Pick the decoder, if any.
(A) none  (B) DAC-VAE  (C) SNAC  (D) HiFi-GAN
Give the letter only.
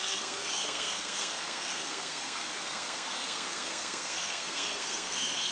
C